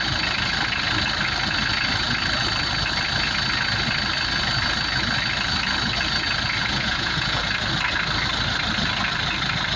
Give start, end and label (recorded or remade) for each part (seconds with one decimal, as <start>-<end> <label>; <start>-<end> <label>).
0.0-6.6 recorded; 6.6-7.4 remade; 7.4-9.8 recorded